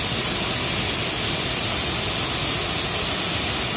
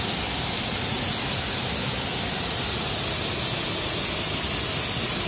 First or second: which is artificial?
second